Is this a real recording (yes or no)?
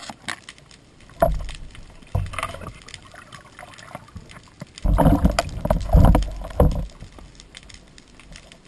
yes